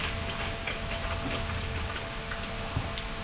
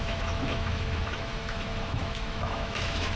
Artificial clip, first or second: second